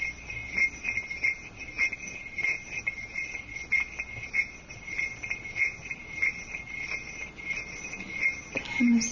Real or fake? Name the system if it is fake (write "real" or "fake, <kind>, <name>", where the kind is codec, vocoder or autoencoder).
real